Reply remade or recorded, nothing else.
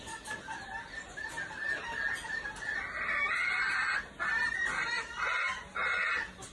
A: recorded